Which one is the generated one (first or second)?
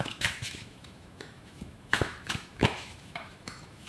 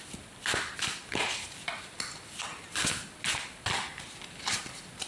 first